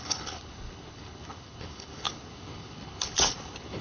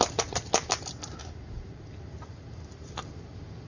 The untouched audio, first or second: second